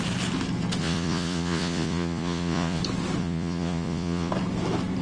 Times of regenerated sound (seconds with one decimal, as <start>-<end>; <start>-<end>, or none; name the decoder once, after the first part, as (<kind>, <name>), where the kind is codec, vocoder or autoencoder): 0.8-2.8 (vocoder, Vocos); 3.2-4.3